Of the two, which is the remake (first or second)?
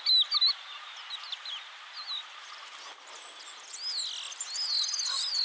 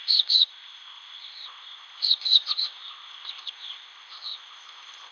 second